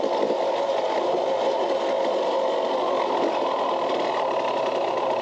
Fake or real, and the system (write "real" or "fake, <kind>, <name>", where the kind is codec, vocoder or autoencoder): real